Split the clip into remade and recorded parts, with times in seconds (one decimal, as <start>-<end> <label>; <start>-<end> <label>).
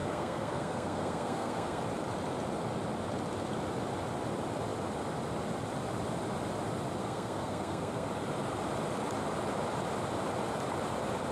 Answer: 0.0-1.8 remade; 1.8-7.0 recorded; 7.0-8.1 remade; 8.1-11.3 recorded